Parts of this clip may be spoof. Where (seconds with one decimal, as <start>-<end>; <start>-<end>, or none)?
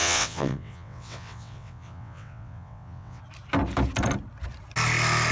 0.0-3.2